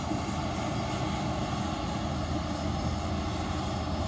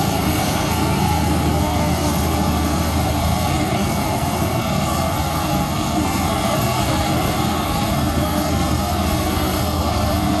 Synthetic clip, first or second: second